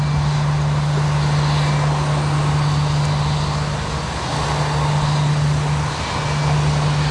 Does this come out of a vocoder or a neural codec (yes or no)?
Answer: no